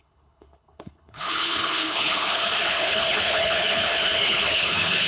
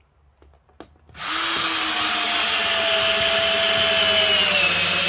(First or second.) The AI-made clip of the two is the first